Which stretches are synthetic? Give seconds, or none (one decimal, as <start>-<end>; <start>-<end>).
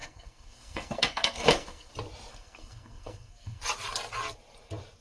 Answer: 0.0-1.9; 2.3-3.6